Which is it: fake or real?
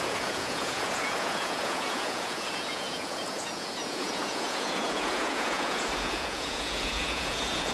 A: fake